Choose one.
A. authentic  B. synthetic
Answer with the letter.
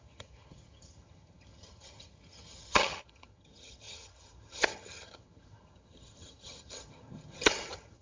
B